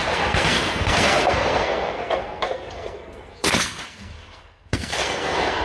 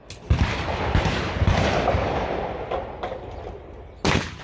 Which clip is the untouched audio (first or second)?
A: second